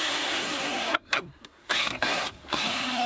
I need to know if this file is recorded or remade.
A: remade